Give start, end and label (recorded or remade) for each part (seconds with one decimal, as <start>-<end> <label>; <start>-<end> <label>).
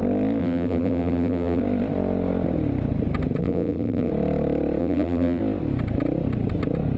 0.0-0.4 recorded; 0.4-1.6 remade; 1.6-3.4 recorded; 3.4-4.1 remade; 4.1-4.8 recorded; 4.8-5.4 remade; 5.4-7.0 recorded